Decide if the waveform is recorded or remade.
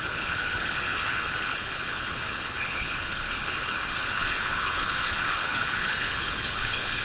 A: remade